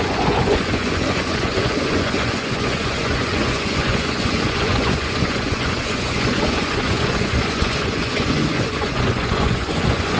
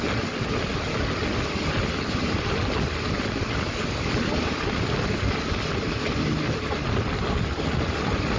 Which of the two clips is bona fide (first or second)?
second